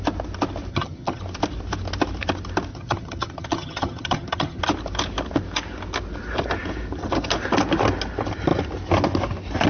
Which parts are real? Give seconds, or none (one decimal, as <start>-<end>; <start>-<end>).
0.0-0.7; 1.2-2.7; 4.6-9.7

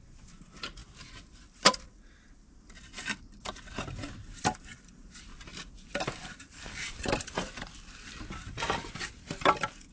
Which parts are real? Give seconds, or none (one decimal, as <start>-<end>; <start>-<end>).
0.0-9.9

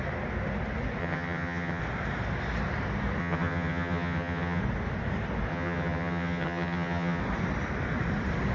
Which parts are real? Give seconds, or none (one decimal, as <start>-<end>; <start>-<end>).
0.0-1.0; 1.8-3.2; 4.6-5.5; 7.2-8.5

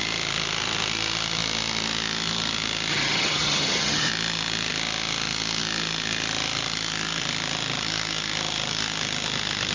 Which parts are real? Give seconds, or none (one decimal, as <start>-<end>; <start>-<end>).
0.0-2.9; 4.1-9.7

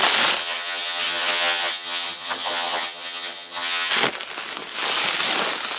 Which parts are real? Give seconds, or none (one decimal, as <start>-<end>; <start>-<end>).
0.0-0.4; 3.9-5.8

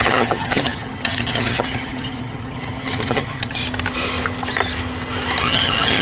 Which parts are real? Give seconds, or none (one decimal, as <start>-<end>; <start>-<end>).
3.6-5.4